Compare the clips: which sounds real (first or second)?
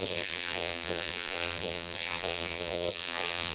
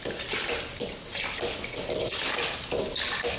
second